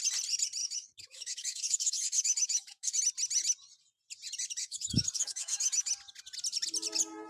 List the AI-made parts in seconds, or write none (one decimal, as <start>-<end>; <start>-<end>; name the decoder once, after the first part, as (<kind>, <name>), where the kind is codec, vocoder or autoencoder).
0.6-3.0 (autoencoder, DAC-VAE); 4.6-5.9